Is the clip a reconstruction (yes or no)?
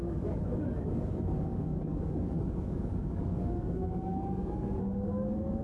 yes